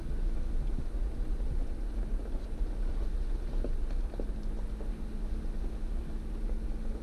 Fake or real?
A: real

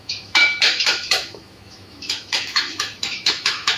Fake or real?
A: fake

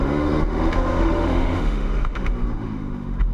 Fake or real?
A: fake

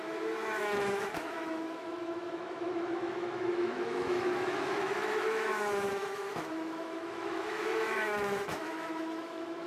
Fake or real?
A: fake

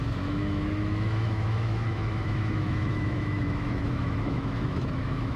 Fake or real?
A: fake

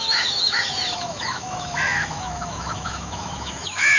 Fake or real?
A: fake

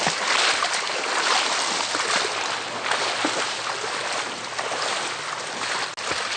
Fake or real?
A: real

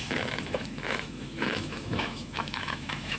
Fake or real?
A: fake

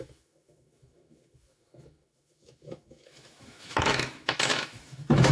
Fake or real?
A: fake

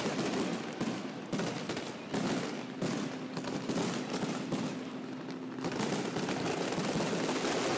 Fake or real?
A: real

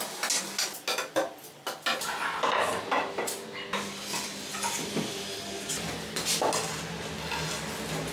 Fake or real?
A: real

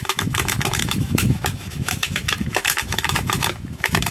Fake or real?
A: fake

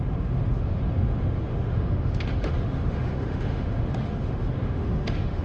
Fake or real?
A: fake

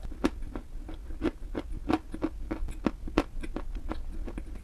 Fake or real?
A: real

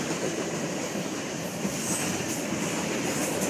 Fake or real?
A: real